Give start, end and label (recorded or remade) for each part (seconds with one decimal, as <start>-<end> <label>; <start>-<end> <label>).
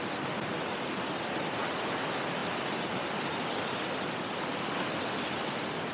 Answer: 0.0-5.9 recorded